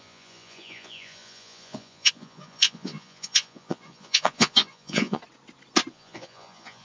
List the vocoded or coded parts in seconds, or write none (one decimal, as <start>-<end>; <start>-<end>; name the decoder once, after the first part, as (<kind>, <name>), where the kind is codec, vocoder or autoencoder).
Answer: 0.0-5.2 (vocoder, Vocos); 5.9-6.8